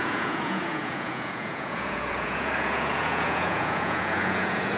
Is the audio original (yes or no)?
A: no